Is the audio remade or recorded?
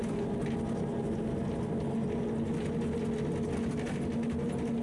recorded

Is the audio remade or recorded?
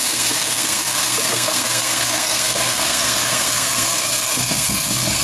remade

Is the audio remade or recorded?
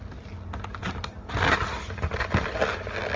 recorded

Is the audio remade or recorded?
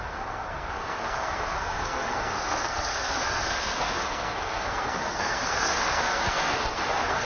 remade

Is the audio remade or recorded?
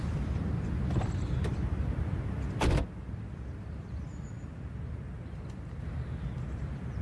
recorded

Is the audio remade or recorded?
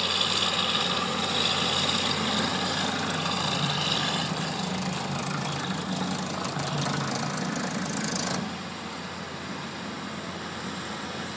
recorded